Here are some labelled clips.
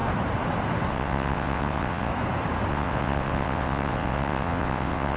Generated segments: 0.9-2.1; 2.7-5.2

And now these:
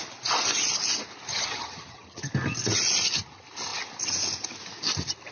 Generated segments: 1.3-2.3

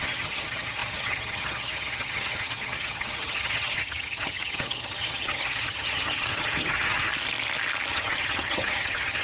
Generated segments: 0.0-7.1; 7.9-9.2

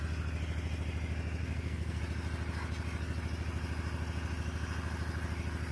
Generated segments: 1.4-2.0

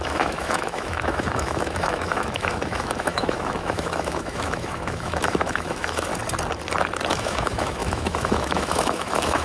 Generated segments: 0.0-6.1; 7.1-9.4

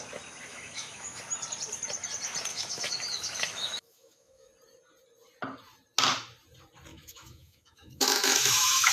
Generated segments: 0.5-1.2; 2.5-4.5; 6.9-8.9

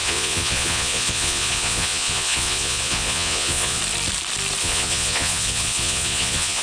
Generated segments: 0.0-3.8; 4.6-6.6

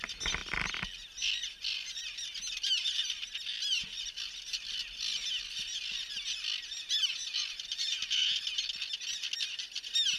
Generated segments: none